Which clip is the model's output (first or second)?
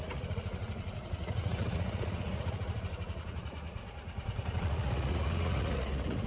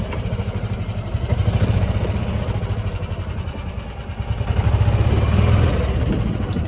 first